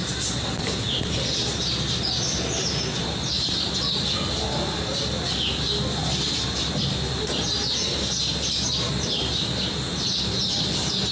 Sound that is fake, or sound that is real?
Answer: real